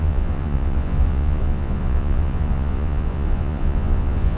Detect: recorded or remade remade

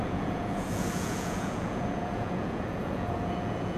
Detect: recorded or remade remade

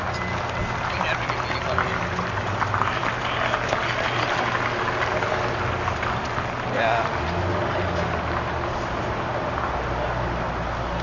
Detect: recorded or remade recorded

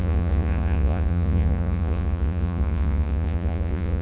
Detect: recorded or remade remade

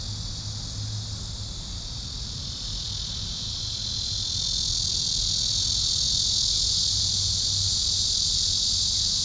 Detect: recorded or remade recorded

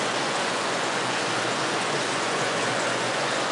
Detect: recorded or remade remade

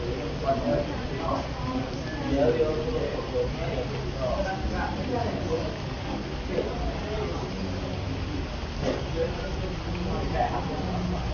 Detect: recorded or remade recorded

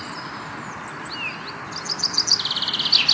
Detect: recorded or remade recorded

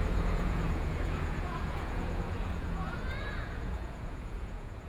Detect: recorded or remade remade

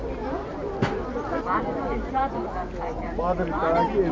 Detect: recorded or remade recorded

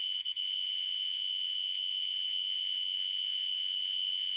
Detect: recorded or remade remade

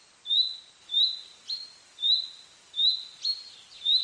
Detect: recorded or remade recorded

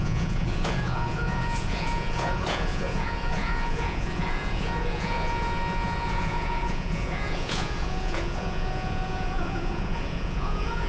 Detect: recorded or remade remade